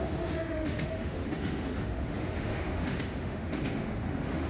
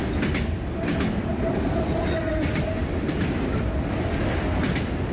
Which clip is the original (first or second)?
second